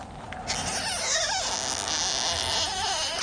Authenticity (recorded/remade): recorded